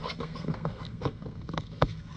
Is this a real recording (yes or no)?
no